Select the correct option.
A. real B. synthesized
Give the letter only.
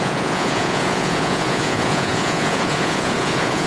B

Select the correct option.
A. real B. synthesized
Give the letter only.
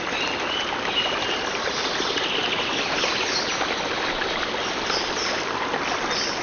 A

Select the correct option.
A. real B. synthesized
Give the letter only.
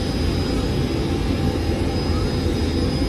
A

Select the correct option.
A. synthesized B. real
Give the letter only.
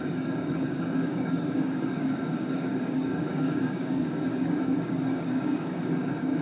A